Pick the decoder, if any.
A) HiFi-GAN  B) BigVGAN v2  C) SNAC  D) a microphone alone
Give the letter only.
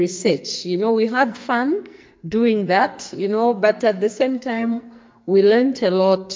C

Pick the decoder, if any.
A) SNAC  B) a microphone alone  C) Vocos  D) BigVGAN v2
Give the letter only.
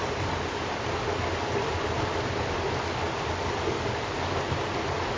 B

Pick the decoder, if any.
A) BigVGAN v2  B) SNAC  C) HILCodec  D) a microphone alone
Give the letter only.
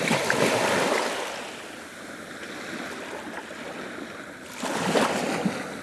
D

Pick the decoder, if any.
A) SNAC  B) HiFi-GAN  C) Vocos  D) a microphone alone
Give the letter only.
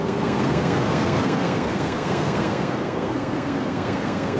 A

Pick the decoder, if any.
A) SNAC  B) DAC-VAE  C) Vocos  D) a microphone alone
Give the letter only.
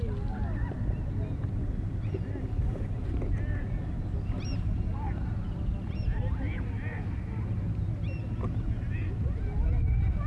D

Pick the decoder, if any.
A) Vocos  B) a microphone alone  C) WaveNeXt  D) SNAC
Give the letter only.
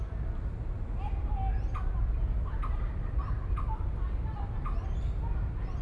B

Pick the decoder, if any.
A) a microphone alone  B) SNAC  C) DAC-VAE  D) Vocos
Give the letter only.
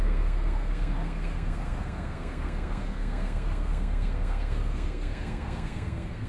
B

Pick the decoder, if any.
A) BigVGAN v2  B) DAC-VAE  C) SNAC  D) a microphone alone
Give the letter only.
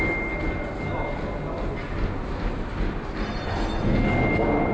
D